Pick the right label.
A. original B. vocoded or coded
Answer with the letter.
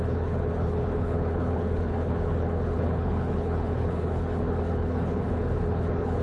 B